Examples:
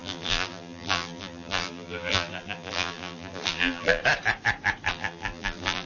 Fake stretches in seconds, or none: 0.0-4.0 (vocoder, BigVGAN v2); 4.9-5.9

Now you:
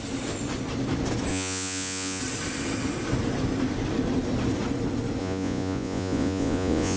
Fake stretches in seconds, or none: 1.3-2.2 (vocoder, Vocos); 5.2-7.0

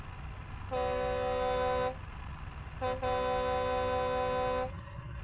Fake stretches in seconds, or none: 4.7-5.2 (codec, SNAC)

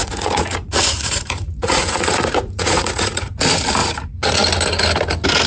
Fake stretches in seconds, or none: 0.0-3.3 (vocoder, Vocos); 3.8-4.3

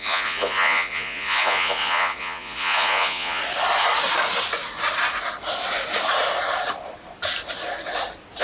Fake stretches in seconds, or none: 0.0-3.4 (vocoder, Vocos)

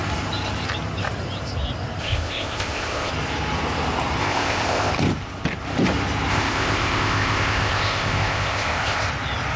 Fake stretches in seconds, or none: 2.0-3.1 (codec, ZipCodec); 4.2-4.9; 6.3-9.1

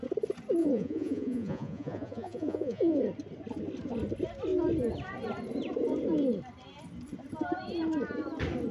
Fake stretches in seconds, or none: 0.6-3.0 (vocoder, Vocos)